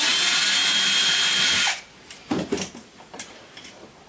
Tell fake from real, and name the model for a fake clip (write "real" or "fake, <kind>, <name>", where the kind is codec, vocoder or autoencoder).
real